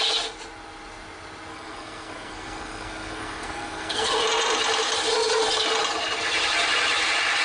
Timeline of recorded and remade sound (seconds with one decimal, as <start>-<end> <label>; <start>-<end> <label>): 0.0-1.5 recorded; 1.5-4.1 remade; 4.1-7.4 recorded